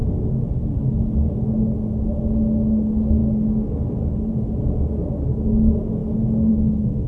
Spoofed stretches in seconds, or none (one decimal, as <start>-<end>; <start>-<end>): none

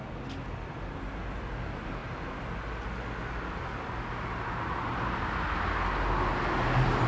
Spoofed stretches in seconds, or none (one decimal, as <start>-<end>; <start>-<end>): none